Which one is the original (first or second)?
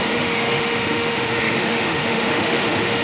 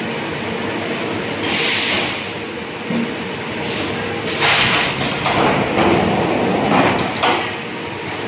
second